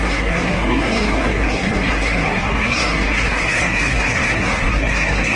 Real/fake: fake